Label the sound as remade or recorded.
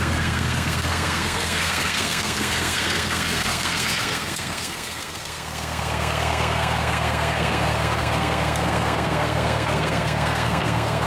remade